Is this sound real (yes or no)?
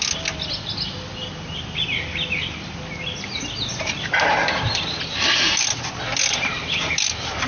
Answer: yes